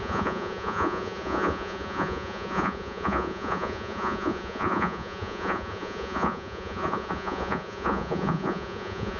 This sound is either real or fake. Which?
fake